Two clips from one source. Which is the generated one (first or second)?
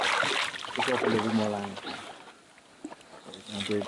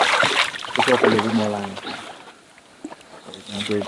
second